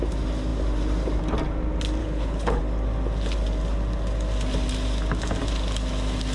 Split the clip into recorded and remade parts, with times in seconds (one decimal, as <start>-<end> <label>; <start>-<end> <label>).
0.0-2.0 recorded; 2.0-2.6 remade; 2.6-6.3 recorded